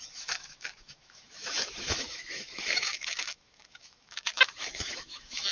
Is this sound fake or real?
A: fake